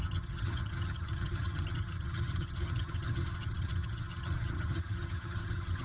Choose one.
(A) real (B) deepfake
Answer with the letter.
B